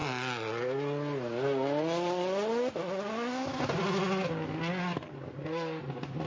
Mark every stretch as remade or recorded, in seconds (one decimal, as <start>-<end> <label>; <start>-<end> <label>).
0.0-6.3 recorded